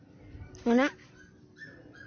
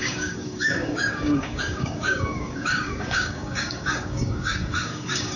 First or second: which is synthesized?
second